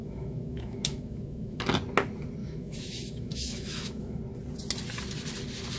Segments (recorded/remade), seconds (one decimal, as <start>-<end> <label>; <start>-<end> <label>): 0.0-1.6 remade; 1.6-2.4 recorded; 2.4-4.2 remade; 4.2-5.8 recorded